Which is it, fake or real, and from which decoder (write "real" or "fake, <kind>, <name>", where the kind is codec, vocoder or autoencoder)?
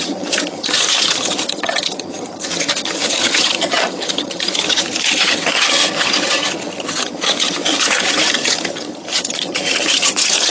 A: fake, vocoder, HiFi-GAN